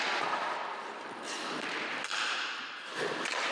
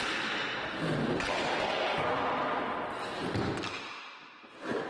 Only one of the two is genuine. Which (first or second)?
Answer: second